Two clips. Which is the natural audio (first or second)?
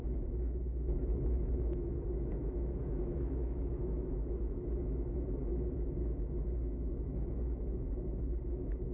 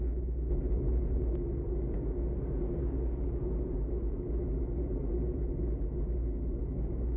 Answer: second